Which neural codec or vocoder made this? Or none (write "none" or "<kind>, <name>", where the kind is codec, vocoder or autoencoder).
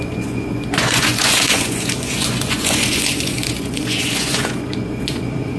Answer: vocoder, Vocos